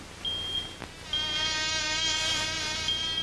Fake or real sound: real